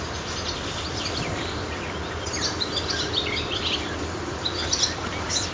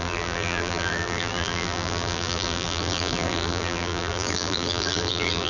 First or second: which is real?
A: first